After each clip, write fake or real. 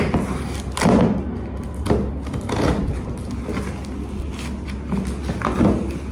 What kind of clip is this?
real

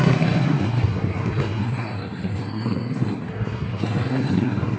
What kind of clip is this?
fake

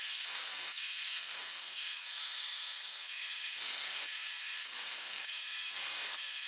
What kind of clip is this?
fake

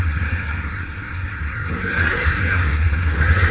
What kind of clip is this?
fake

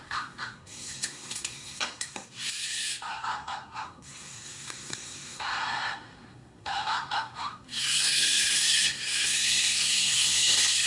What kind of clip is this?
fake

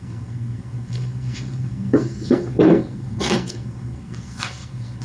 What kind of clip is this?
fake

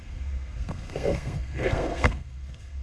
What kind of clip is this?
fake